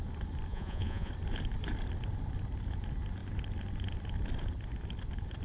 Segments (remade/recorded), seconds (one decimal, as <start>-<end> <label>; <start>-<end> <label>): 0.0-0.5 recorded; 0.5-1.1 remade; 1.1-5.4 recorded